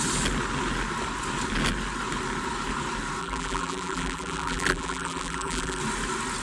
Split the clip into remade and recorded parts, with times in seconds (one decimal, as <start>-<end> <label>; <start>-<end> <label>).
0.0-3.2 recorded; 3.2-5.8 remade; 5.8-6.4 recorded